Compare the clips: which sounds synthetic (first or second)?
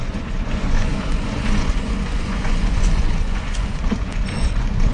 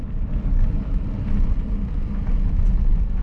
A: first